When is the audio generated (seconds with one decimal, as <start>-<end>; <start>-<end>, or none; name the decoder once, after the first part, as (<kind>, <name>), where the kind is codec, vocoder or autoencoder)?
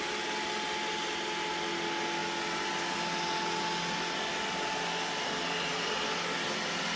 none